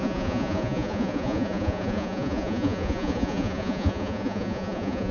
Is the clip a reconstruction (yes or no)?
yes